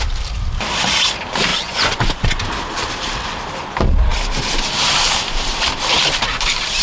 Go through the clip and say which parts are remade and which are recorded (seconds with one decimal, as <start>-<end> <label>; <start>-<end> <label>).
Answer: 0.0-1.5 recorded; 1.5-2.4 remade; 2.4-6.8 recorded